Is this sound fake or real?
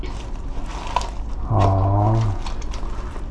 real